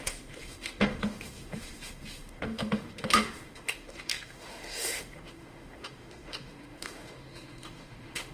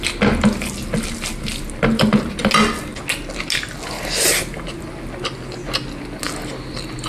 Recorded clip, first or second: second